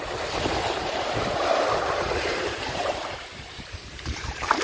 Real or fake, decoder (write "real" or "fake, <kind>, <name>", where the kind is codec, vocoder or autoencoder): fake, vocoder, BigVGAN v2